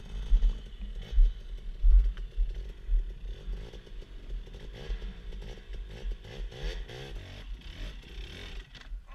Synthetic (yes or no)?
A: no